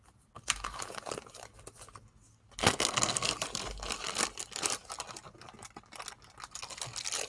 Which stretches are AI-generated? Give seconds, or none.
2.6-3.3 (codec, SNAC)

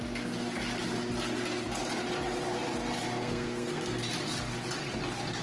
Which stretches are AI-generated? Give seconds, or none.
3.2-4.0 (codec, SNAC)

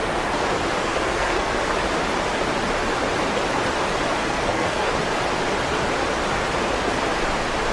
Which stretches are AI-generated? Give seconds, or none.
0.8-1.7 (codec, SNAC); 4.2-4.9